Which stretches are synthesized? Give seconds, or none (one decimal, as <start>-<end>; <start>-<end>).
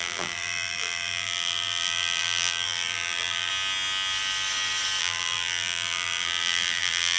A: 0.0-3.5; 5.0-7.2